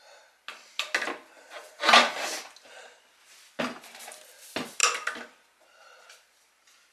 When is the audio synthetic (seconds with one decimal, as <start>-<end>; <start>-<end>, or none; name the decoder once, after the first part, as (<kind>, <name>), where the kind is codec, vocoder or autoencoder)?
none